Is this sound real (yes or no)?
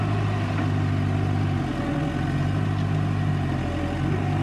yes